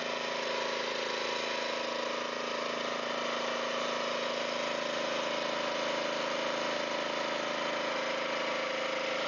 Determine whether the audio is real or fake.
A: real